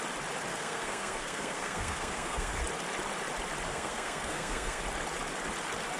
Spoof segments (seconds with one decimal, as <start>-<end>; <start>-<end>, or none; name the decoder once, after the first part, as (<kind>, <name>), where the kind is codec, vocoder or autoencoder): 0.5-2.6 (codec, SNAC); 3.7-4.8